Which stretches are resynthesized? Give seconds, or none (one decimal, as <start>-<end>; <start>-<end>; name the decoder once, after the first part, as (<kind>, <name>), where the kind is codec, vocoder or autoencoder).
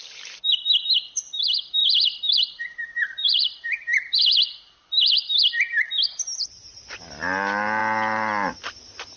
1.8-4.2 (vocoder, BigVGAN v2)